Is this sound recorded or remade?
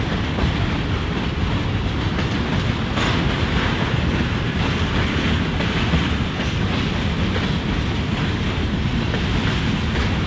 recorded